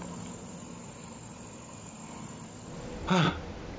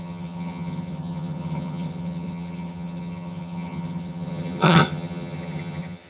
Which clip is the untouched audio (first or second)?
first